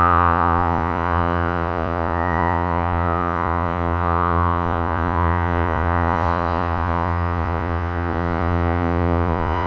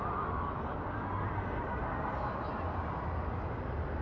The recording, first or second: second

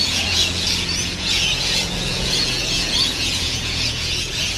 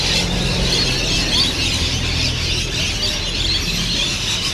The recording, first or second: second